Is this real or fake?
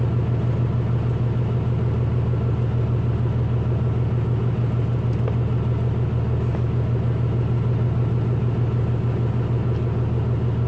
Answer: real